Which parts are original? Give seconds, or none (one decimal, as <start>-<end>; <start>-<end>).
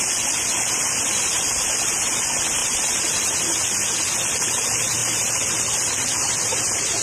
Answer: 0.0-2.6; 3.7-5.0; 5.6-7.0